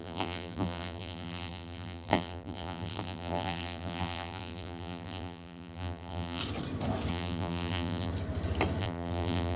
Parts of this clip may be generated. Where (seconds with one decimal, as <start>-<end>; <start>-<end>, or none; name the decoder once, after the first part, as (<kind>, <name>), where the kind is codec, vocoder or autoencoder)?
0.0-6.4 (vocoder, BigVGAN v2); 7.1-8.1; 8.8-9.6